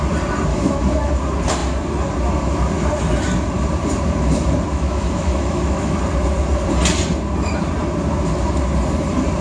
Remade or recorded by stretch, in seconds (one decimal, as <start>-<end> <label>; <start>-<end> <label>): 0.0-0.5 recorded; 0.5-1.1 remade; 1.1-4.7 recorded; 4.7-6.0 remade; 6.0-9.4 recorded